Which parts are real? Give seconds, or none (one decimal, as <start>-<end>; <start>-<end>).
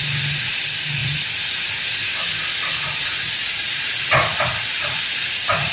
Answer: none